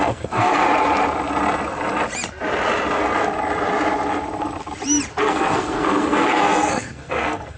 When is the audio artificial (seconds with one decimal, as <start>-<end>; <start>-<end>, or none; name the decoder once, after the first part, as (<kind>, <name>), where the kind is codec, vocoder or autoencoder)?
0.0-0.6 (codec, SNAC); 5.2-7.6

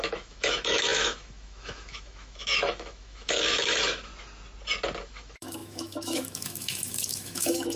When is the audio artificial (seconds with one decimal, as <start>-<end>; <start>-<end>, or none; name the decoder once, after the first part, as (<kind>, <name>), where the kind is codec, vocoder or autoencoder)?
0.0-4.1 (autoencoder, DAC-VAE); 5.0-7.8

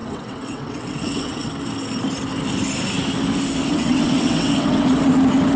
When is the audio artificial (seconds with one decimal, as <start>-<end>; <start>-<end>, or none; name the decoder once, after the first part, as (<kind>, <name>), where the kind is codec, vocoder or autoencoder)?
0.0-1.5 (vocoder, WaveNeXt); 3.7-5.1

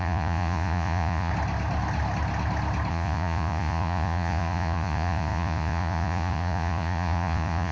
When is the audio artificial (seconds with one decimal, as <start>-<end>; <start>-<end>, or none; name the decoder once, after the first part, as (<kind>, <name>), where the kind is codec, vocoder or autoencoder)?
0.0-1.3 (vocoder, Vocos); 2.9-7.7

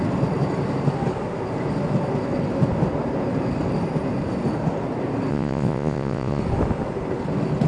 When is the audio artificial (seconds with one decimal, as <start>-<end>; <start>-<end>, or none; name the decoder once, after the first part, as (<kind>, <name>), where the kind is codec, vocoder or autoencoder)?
5.3-6.4 (vocoder, Vocos)

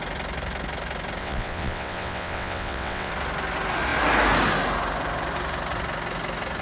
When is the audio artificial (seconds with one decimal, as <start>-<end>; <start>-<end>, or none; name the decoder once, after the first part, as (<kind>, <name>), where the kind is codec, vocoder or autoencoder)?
1.2-3.1 (vocoder, WaveNeXt)